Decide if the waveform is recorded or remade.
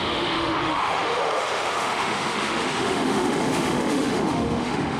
remade